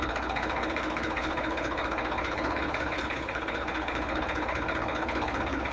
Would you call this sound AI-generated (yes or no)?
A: yes